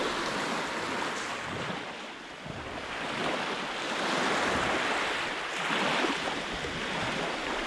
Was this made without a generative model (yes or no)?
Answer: yes